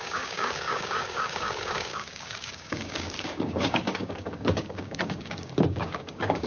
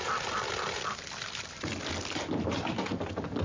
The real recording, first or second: second